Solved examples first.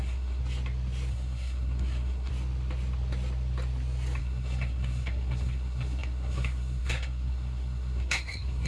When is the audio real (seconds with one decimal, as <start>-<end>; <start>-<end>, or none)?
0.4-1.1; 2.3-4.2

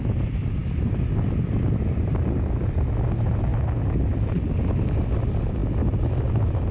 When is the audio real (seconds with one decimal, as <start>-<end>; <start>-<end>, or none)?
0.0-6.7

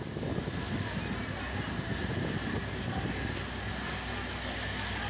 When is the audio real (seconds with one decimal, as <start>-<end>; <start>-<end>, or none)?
0.0-5.1

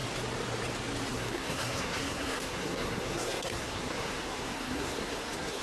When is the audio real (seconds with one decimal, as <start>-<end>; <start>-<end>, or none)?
0.0-1.1

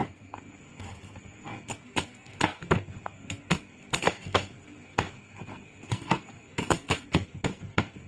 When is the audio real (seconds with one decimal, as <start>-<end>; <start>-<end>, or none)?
none